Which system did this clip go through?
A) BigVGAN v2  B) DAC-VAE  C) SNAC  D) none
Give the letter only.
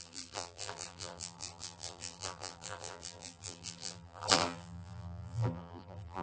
A